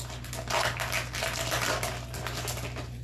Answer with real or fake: real